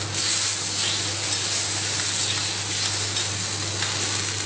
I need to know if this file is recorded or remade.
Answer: recorded